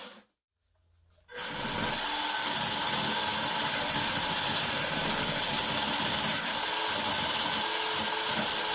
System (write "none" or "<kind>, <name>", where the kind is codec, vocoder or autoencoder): none